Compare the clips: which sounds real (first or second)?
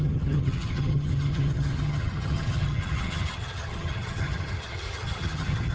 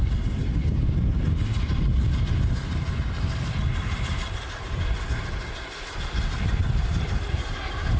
second